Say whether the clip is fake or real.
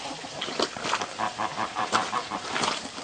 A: real